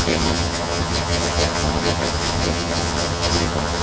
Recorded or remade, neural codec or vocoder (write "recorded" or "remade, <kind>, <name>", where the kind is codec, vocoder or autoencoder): remade, vocoder, HiFi-GAN